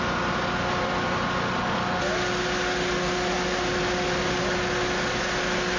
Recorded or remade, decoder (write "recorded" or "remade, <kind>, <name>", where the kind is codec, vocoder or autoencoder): recorded